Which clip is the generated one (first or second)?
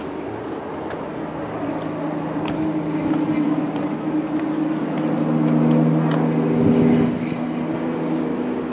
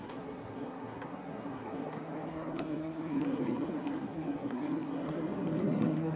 second